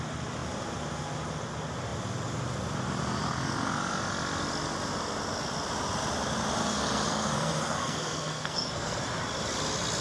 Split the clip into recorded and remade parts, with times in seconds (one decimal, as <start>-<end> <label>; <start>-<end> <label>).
0.0-6.6 recorded; 6.6-9.0 remade; 9.0-10.0 recorded